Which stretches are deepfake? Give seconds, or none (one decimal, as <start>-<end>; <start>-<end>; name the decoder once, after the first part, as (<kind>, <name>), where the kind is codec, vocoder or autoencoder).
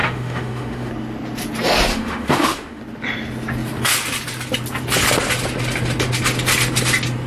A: 0.0-0.9 (autoencoder, DAC-VAE); 1.9-2.8